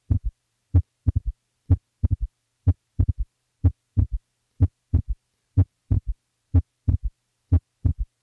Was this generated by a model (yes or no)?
yes